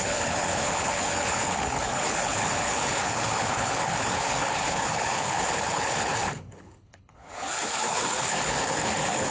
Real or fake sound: fake